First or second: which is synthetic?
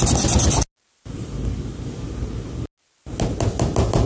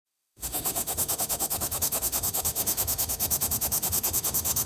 second